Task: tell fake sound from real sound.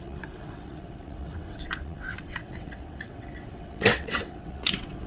fake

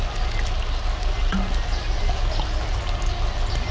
real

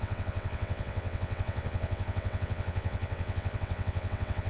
fake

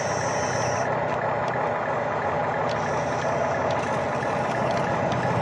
real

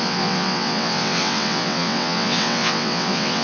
fake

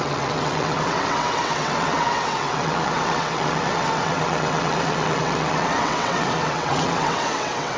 fake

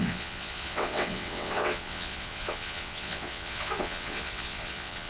fake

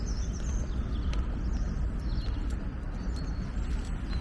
real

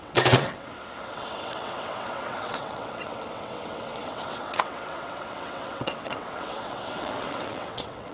fake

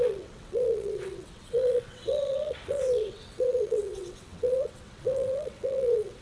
fake